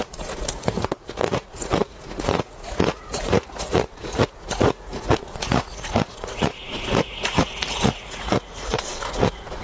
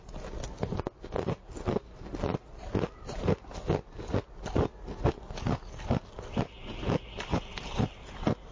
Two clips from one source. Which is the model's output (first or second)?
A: first